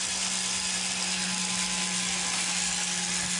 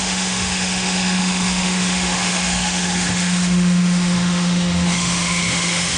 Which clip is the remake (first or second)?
second